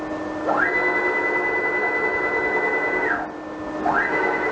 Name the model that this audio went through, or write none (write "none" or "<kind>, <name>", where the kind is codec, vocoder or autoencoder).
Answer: none